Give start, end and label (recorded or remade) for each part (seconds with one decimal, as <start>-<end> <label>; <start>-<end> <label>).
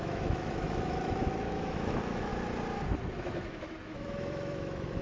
0.0-2.3 remade; 2.3-3.2 recorded; 3.2-5.0 remade